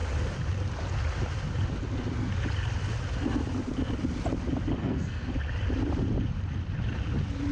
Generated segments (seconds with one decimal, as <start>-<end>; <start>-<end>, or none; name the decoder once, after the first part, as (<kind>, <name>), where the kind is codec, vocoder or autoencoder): 4.8-5.3 (codec, SNAC)